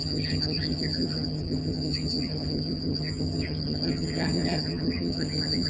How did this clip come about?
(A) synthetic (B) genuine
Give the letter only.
A